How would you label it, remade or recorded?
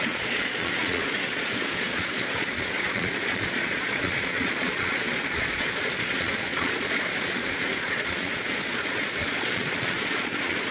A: remade